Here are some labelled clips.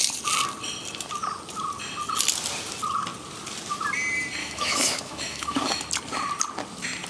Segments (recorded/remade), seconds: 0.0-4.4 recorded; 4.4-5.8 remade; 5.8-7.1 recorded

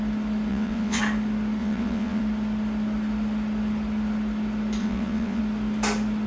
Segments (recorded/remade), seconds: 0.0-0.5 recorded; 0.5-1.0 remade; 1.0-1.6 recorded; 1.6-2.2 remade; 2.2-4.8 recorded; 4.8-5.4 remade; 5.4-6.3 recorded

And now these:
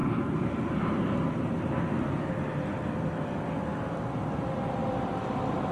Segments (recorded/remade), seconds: 0.0-5.7 recorded